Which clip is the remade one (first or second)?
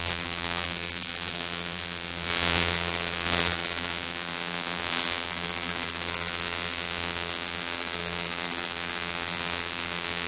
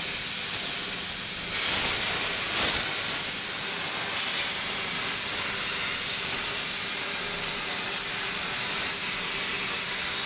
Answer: first